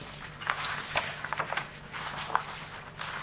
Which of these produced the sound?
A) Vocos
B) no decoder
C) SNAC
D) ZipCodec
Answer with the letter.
B